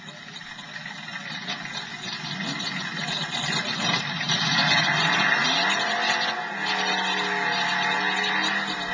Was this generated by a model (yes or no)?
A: no